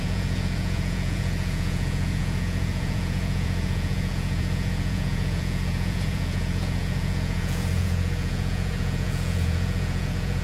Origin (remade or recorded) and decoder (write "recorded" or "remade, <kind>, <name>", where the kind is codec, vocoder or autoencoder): remade, vocoder, Vocos